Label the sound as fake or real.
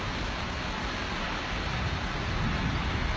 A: real